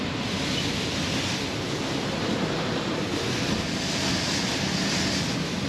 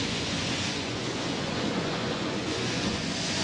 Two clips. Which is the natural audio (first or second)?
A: first